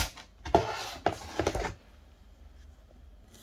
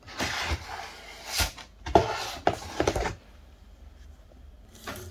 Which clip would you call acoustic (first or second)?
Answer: first